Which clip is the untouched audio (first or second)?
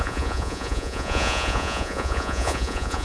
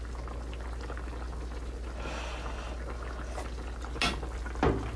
second